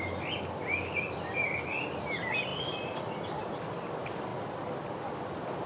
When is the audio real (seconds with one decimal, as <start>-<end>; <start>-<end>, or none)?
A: 0.0-2.5; 3.4-4.3